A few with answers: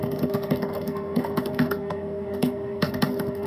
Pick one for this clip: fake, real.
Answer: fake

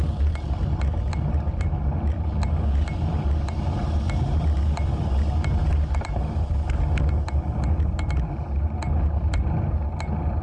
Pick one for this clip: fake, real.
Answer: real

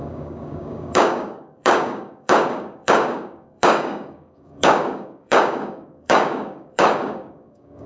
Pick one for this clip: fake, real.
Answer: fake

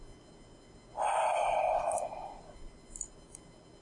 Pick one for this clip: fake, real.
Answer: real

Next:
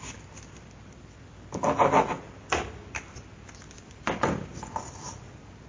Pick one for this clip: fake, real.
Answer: real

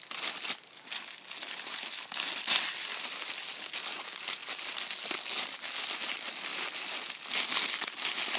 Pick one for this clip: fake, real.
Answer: real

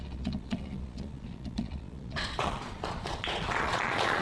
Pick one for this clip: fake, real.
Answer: fake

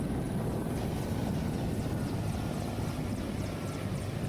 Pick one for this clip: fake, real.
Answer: real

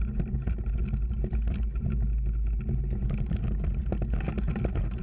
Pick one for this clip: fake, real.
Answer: real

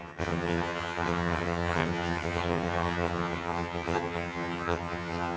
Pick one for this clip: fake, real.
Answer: fake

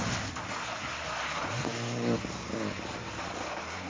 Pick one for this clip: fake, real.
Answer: real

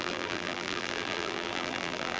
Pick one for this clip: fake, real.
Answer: fake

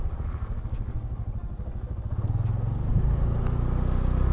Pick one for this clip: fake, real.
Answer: real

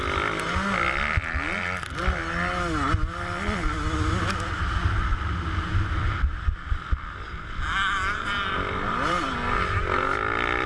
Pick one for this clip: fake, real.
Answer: real